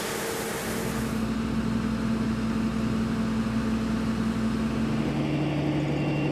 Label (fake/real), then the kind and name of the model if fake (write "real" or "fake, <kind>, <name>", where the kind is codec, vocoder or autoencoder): real